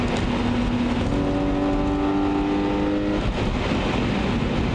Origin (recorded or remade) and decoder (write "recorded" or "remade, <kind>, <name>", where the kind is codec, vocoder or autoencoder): recorded